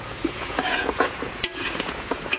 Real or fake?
fake